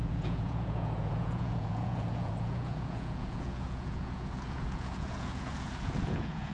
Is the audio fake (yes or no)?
yes